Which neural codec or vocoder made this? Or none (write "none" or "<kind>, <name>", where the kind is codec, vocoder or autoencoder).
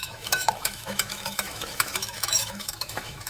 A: autoencoder, DAC-VAE